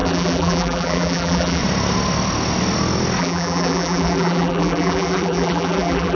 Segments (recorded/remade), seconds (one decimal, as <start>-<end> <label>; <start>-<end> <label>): 0.0-1.6 remade; 1.6-3.2 recorded; 3.2-6.1 remade